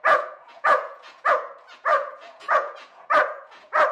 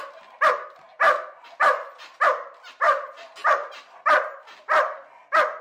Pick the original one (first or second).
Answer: second